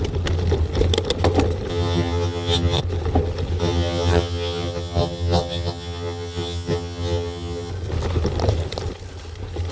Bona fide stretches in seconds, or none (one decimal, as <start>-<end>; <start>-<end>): 0.0-1.7; 2.8-3.6; 7.7-9.7